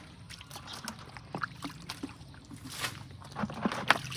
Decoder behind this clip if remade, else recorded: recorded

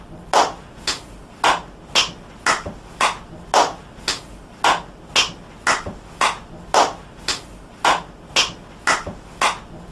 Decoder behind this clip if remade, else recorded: recorded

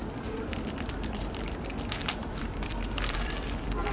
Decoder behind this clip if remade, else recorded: remade, vocoder, BigVGAN v2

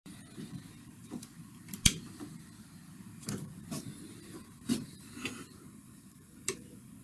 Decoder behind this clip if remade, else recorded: remade, vocoder, BigVGAN v2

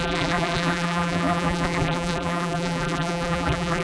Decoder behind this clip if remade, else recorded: remade, vocoder, BigVGAN v2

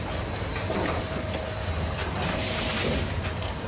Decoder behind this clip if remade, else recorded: remade, vocoder, BigVGAN v2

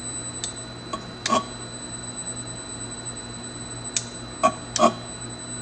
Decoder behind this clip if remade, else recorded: recorded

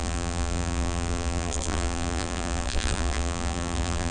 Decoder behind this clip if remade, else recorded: remade, vocoder, BigVGAN v2